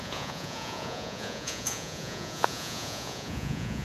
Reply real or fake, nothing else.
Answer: fake